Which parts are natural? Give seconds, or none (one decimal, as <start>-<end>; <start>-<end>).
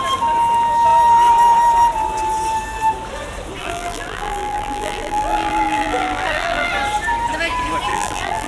0.0-3.6; 6.7-7.9